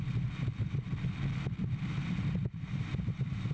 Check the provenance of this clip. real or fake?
real